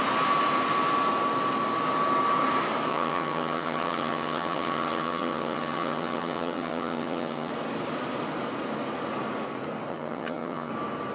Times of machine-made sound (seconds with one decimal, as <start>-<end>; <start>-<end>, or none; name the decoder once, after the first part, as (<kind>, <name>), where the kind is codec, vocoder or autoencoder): 2.9-7.5 (vocoder, HiFi-GAN); 9.9-10.7